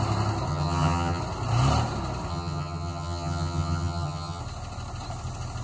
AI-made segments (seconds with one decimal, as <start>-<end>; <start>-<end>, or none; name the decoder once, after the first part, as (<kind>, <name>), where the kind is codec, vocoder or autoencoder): 0.5-1.2 (vocoder, HiFi-GAN); 2.3-4.4